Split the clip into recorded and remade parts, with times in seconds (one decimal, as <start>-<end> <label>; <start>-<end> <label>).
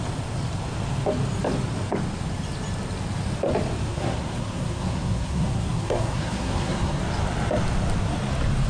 0.0-3.9 recorded; 3.9-7.0 remade; 7.0-8.7 recorded